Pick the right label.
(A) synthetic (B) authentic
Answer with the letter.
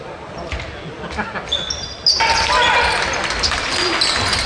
B